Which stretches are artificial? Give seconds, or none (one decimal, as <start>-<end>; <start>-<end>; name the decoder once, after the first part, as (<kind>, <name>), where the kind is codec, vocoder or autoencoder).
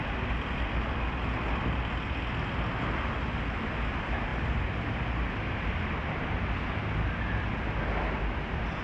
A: none